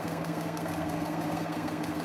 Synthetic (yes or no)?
yes